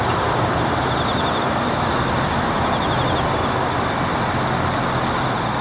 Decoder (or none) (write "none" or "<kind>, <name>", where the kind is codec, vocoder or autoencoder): none